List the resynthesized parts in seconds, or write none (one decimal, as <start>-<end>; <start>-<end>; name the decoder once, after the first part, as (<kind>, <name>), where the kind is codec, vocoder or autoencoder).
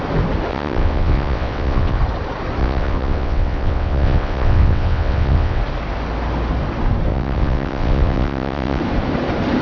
0.5-2.0 (vocoder, WaveNeXt); 2.6-5.6; 7.1-8.8